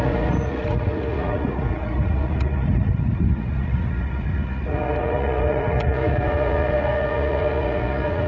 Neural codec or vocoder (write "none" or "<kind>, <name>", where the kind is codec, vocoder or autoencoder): vocoder, Vocos